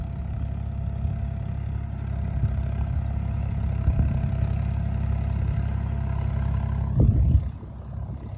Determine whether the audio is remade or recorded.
recorded